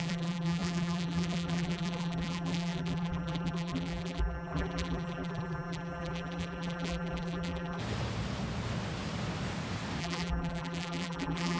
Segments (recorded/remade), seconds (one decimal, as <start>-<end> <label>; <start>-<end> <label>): 0.0-7.8 remade; 7.8-10.0 recorded; 10.0-11.6 remade